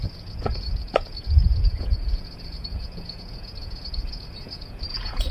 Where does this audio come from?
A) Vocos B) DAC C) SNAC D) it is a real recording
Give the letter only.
A